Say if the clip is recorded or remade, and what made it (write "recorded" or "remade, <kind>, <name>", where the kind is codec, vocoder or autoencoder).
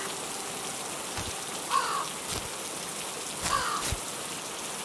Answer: recorded